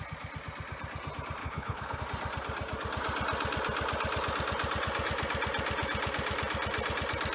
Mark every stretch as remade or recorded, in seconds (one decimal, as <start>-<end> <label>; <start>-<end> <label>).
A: 0.0-1.4 recorded; 1.4-2.0 remade; 2.0-7.3 recorded